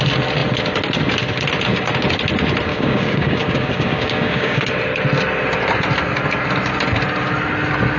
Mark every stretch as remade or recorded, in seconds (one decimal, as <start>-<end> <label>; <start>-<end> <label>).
0.0-2.7 recorded; 2.7-4.6 remade; 4.6-8.0 recorded